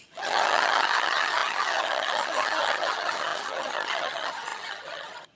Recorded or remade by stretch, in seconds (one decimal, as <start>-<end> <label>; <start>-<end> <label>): 0.0-5.4 remade